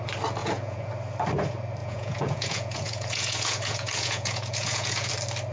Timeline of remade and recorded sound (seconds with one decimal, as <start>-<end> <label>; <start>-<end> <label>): 0.0-0.4 recorded; 0.4-0.9 remade; 0.9-1.8 recorded; 1.8-5.1 remade; 5.1-5.5 recorded